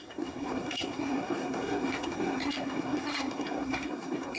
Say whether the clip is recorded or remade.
remade